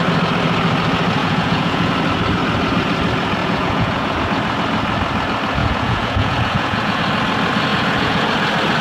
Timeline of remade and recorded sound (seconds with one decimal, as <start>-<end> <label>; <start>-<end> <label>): 0.0-1.2 recorded; 1.2-1.9 remade; 1.9-3.4 recorded; 3.4-4.2 remade; 4.2-5.6 recorded; 5.6-7.0 remade; 7.0-7.7 recorded; 7.7-8.3 remade; 8.3-8.8 recorded